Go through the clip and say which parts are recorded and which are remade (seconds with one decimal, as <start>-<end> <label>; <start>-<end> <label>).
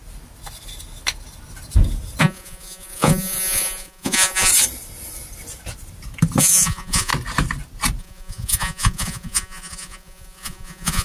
0.0-2.2 recorded; 2.2-4.5 remade; 4.5-6.4 recorded; 6.4-7.1 remade; 7.1-8.0 recorded; 8.0-11.0 remade